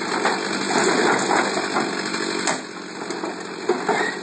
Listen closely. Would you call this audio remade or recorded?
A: recorded